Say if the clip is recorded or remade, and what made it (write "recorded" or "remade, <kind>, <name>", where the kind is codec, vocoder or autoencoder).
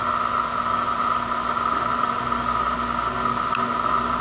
recorded